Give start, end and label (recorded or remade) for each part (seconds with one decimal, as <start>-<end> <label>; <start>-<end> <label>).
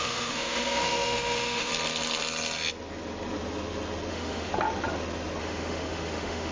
0.0-1.7 remade; 1.7-4.1 recorded; 4.1-4.5 remade; 4.5-5.4 recorded; 5.4-6.5 remade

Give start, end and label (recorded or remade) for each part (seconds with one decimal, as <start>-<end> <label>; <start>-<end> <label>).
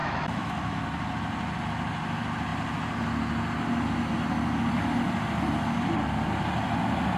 0.0-0.8 remade; 0.8-7.2 recorded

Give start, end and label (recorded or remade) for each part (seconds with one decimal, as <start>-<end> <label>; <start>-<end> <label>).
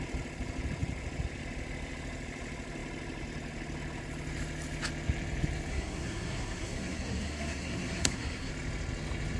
0.0-5.7 recorded; 5.7-8.5 remade; 8.5-9.4 recorded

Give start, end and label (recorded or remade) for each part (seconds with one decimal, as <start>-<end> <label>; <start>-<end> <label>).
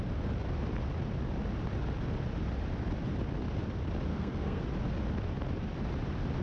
0.0-4.1 recorded; 4.1-4.6 remade; 4.6-6.4 recorded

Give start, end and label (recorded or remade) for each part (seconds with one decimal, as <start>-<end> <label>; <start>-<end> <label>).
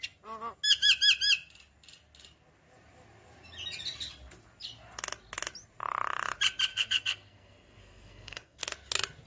0.0-6.7 recorded; 6.7-8.6 remade; 8.6-9.3 recorded